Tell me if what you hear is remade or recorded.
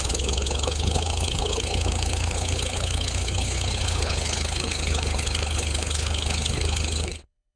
remade